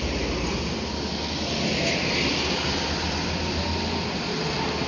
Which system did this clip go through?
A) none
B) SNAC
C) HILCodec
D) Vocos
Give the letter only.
A